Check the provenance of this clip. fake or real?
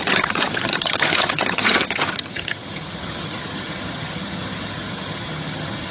fake